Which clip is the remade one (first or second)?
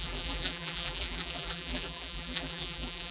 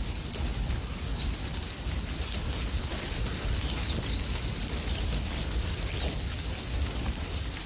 first